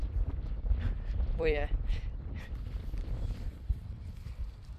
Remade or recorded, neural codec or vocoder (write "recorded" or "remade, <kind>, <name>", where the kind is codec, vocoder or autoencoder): remade, vocoder, BigVGAN v2